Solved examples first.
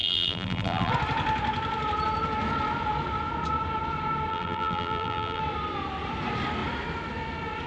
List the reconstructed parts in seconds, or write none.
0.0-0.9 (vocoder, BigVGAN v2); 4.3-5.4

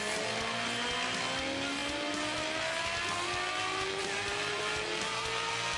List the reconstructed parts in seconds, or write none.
4.0-4.6 (vocoder, BigVGAN v2)

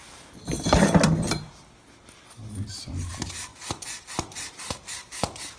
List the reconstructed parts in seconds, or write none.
2.4-3.1 (vocoder, BigVGAN v2); 3.5-5.6

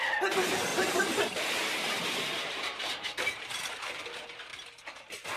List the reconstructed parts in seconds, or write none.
0.7-3.9 (vocoder, BigVGAN v2)

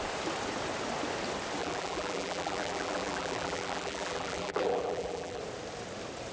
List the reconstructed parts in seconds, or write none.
1.6-5.4 (vocoder, BigVGAN v2)